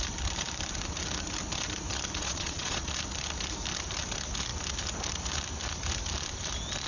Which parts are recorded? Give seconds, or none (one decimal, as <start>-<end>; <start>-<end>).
0.0-2.2; 2.9-6.9